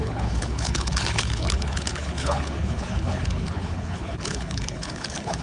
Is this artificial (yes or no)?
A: yes